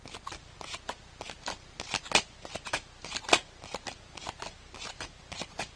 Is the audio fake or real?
real